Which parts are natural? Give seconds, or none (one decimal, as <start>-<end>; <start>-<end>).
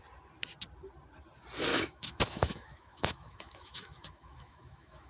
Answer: 0.0-1.7